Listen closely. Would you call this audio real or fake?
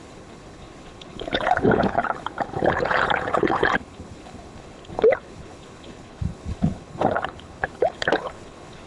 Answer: fake